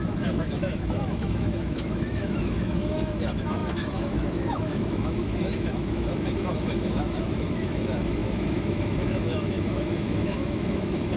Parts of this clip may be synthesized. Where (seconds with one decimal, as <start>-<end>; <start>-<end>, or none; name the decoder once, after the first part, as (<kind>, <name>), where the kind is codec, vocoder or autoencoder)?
0.0-11.2 (autoencoder, DAC-VAE)